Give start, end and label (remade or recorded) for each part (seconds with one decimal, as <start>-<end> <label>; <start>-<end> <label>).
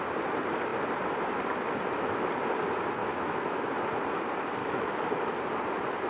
0.0-3.0 recorded; 3.0-3.7 remade; 3.7-4.6 recorded; 4.6-5.4 remade; 5.4-6.1 recorded